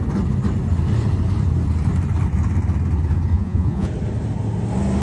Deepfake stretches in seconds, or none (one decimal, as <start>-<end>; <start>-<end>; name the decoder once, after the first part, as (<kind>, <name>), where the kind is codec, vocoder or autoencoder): 3.3-3.9 (vocoder, Vocos)

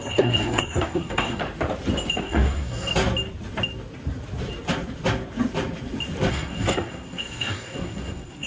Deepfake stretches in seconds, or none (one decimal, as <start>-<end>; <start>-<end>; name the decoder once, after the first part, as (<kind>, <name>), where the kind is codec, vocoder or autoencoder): 0.0-1.4 (codec, SNAC); 2.2-2.9; 6.3-8.5

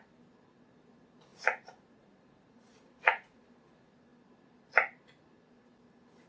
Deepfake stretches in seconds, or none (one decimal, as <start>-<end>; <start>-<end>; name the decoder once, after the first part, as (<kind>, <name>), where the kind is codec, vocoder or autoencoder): 1.3-3.4 (vocoder, Vocos)

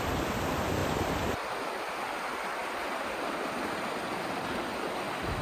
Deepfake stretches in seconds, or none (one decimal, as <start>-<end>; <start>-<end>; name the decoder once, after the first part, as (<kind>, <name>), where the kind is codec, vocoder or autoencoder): none

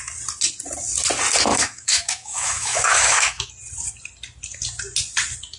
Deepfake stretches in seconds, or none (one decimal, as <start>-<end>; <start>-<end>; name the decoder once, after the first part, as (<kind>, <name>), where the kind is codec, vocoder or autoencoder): 1.5-3.5 (autoencoder, DAC-VAE)

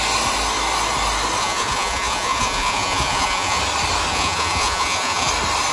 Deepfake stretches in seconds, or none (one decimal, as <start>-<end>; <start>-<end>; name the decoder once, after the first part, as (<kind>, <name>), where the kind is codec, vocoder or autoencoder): 1.4-3.6 (vocoder, Vocos); 4.1-5.3

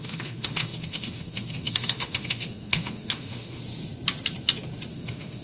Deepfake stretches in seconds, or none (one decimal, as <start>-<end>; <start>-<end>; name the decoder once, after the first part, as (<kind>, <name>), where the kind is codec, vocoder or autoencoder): 0.0-3.6 (autoencoder, DAC-VAE); 4.9-5.4